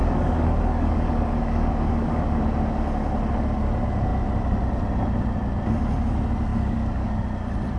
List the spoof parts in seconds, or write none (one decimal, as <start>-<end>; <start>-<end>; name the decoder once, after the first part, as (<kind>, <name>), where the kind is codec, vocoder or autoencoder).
0.0-2.4 (codec, DAC); 6.5-7.1